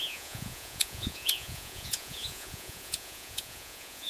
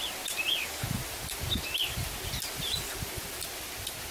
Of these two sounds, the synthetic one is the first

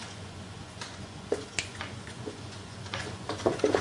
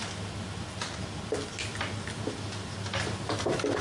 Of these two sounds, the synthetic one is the first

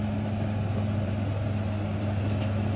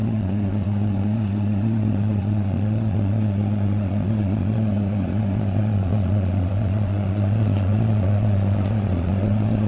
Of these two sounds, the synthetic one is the second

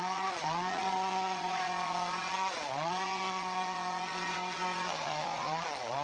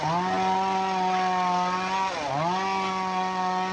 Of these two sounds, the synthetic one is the first